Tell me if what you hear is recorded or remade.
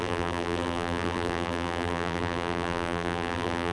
remade